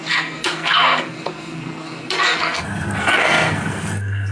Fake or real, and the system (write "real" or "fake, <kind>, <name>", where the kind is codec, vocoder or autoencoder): fake, codec, SNAC